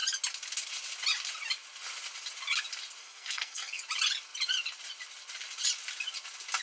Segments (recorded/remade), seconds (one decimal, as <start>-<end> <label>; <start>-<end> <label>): 0.0-3.0 recorded; 3.0-3.8 remade; 3.8-6.6 recorded